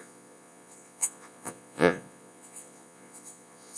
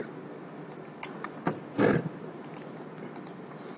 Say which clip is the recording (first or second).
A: second